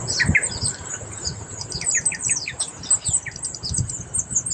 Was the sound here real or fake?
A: real